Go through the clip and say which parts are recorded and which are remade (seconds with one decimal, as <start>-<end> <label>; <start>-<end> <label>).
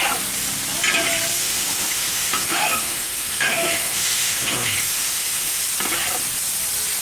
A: 0.0-1.4 recorded; 1.4-5.6 remade; 5.6-7.0 recorded